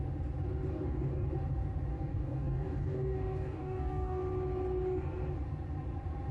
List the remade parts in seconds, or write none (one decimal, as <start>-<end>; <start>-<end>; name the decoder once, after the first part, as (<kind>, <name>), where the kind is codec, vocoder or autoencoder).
0.7-1.3 (codec, DAC); 1.9-4.2